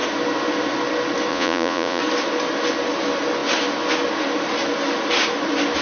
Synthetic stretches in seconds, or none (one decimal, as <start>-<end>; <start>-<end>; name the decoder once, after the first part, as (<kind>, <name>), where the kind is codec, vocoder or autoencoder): 1.3-2.0 (vocoder, Vocos)